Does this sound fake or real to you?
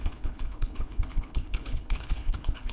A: fake